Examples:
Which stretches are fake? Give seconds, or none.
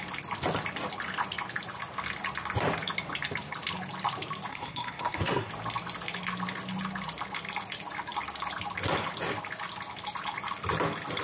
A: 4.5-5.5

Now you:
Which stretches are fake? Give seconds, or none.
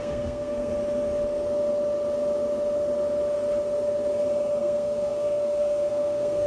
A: 0.0-0.7; 4.6-6.5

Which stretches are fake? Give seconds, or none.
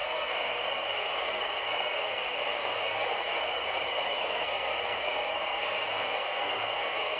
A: 0.0-7.2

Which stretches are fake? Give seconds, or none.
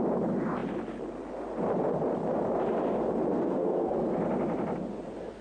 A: 3.3-4.2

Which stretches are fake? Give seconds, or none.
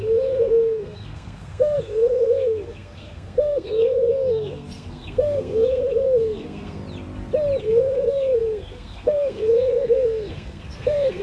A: 0.0-6.8; 7.6-11.2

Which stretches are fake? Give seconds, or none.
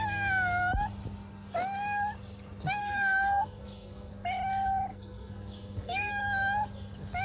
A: 2.8-4.1; 4.9-6.1